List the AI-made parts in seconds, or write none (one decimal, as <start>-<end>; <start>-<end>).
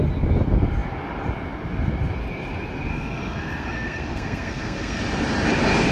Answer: 2.9-5.0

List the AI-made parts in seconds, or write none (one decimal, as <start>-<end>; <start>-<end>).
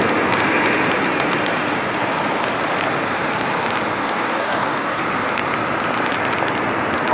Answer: 4.0-5.0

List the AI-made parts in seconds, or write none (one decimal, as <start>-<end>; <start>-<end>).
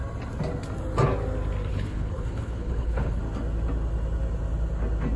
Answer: 1.7-3.2